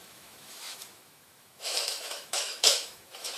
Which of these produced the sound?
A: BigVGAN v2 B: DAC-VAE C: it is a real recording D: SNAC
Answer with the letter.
B